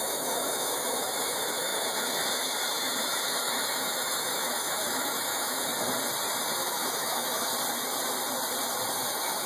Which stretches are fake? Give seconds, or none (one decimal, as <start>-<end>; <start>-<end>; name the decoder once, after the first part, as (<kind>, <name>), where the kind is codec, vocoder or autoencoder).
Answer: 0.0-5.7 (autoencoder, DAC-VAE); 6.6-7.5; 8.9-9.5